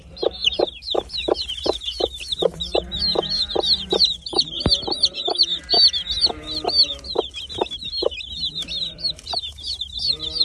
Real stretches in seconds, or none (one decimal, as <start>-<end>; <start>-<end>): 5.5-9.3